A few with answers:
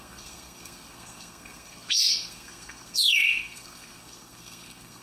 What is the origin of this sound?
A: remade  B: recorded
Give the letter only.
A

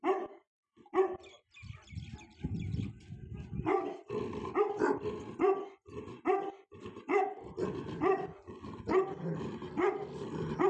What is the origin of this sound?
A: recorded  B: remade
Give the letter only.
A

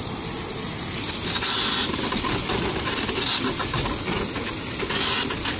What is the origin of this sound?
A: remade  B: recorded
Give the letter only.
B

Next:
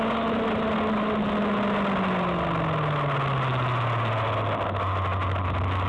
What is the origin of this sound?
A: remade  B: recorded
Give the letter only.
B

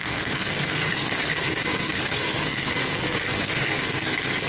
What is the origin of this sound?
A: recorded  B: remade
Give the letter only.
B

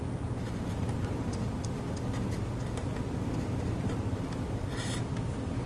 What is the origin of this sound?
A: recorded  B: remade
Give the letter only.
A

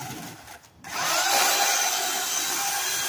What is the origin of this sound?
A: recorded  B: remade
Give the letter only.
A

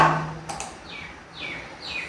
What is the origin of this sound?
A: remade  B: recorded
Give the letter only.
B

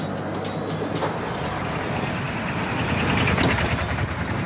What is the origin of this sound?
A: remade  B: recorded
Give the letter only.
B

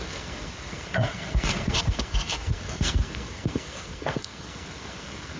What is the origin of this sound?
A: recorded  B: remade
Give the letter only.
B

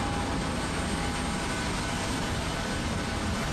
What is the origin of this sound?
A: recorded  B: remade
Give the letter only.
A